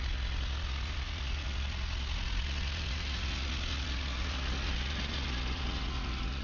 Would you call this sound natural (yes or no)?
no